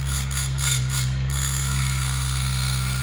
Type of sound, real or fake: fake